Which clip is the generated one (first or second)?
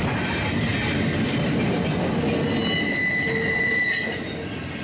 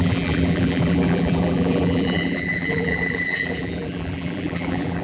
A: second